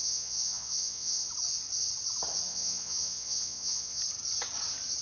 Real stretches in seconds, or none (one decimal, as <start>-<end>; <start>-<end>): 1.3-2.5; 4.0-5.0